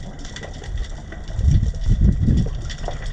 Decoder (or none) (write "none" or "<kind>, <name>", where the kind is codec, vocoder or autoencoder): none